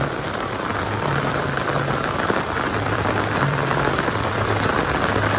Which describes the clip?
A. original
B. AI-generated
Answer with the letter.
B